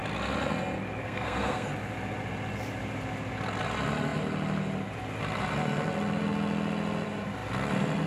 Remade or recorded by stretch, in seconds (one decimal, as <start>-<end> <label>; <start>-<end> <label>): 0.0-1.0 recorded; 1.0-1.7 remade; 1.7-8.1 recorded